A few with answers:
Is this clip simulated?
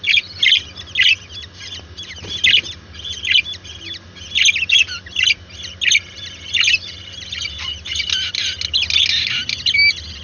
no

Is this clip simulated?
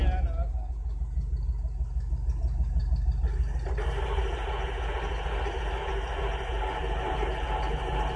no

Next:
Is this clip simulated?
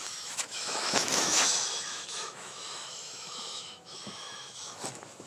yes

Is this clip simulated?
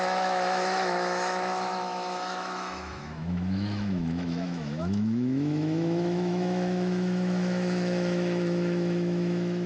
yes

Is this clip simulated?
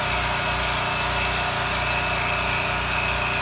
no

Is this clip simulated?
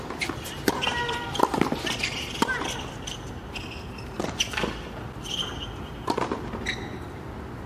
no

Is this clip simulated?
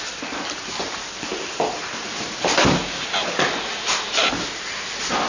no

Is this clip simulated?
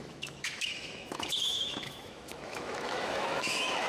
yes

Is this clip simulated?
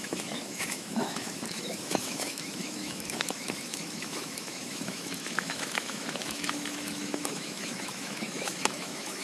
yes